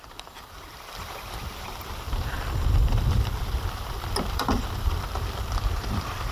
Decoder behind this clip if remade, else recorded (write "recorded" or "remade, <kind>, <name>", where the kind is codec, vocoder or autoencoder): remade, vocoder, BigVGAN v2